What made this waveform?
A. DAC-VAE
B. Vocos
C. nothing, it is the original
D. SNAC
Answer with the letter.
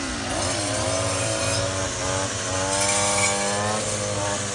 C